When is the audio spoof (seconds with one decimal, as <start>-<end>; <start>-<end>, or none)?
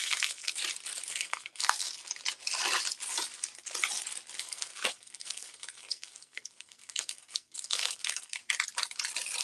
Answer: 0.0-0.6; 1.1-2.0; 4.4-8.4